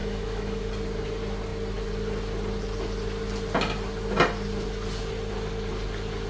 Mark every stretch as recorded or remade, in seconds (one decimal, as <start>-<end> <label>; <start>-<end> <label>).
0.0-0.7 remade; 0.7-6.3 recorded